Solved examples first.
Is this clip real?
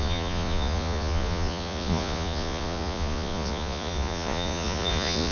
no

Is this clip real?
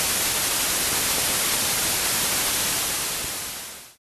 yes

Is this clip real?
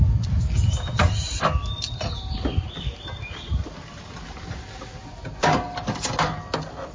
yes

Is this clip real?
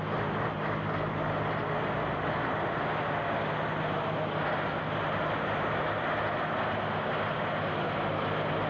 yes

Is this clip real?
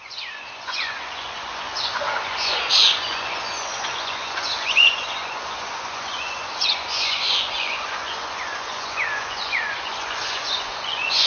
no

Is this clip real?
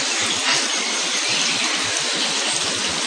yes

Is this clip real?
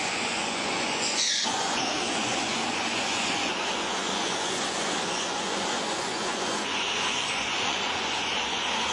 no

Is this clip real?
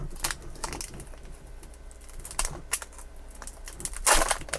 yes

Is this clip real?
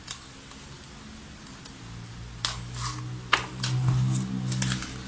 yes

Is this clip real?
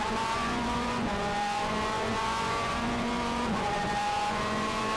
no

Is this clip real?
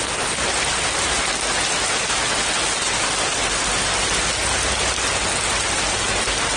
yes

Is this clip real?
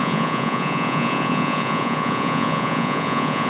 no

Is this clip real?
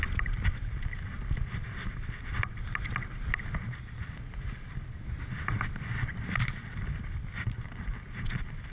yes